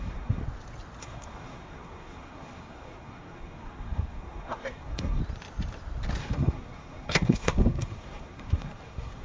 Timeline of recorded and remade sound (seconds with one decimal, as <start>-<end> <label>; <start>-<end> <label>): 0.0-0.4 remade; 0.4-1.0 recorded; 1.0-5.2 remade; 5.2-6.2 recorded; 6.2-9.2 remade